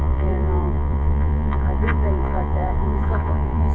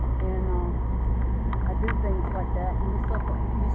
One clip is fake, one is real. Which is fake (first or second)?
first